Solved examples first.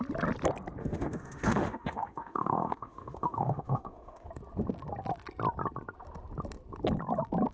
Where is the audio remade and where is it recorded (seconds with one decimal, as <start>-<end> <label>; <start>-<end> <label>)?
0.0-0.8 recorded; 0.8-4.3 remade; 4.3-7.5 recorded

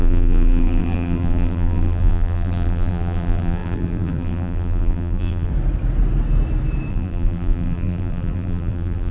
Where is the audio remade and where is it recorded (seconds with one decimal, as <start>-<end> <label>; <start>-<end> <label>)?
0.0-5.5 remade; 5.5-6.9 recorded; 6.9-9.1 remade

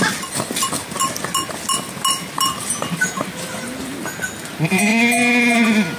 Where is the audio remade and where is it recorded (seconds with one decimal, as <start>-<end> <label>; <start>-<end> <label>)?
0.0-6.0 recorded

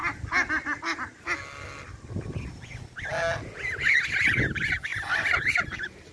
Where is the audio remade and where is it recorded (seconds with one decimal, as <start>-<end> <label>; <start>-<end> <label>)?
0.0-4.9 recorded; 4.9-6.1 remade